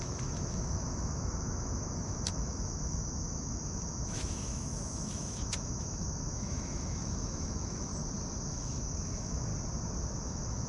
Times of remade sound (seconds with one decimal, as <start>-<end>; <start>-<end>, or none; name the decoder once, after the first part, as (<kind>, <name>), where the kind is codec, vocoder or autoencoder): 0.0-7.9 (autoencoder, DAC-VAE); 8.5-9.5; 10.2-10.7